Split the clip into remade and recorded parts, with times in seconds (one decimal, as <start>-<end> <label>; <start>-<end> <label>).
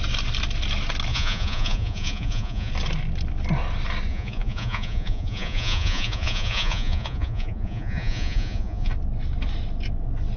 0.0-1.1 recorded; 1.1-2.7 remade; 2.7-4.1 recorded; 4.1-8.9 remade; 8.9-10.4 recorded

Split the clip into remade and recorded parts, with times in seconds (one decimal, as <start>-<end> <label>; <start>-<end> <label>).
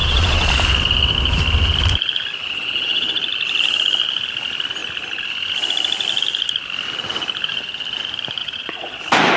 0.0-0.5 remade; 0.5-2.4 recorded; 2.4-3.2 remade; 3.2-8.4 recorded; 8.4-9.0 remade; 9.0-9.4 recorded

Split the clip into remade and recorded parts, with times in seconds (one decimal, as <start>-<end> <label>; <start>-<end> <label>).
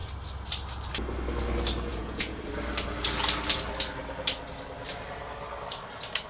0.0-1.9 recorded; 1.9-2.4 remade; 2.4-6.3 recorded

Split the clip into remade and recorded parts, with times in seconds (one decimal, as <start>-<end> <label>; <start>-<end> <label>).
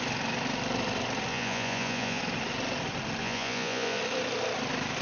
0.0-1.3 recorded; 1.3-2.2 remade; 2.2-3.2 recorded; 3.2-4.0 remade; 4.0-5.0 recorded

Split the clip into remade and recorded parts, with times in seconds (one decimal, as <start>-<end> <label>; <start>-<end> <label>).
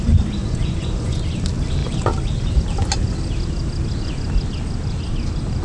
0.0-0.4 recorded; 0.4-1.2 remade; 1.2-5.6 recorded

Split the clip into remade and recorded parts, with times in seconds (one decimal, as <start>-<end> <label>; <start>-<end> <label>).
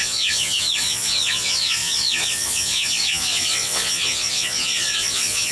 0.0-5.5 remade